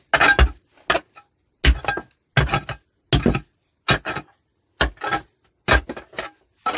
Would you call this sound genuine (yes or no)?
yes